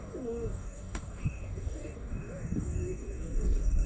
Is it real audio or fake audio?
fake